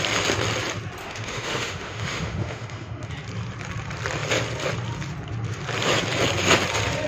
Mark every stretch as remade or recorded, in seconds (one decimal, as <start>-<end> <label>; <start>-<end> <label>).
0.0-1.0 recorded; 1.0-3.1 remade; 3.1-7.1 recorded